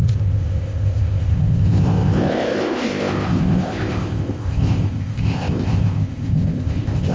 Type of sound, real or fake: fake